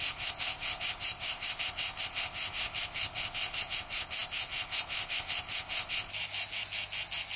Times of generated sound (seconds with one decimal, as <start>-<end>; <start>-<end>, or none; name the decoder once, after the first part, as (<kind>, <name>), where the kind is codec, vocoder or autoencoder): 0.0-6.1 (codec, ZipCodec)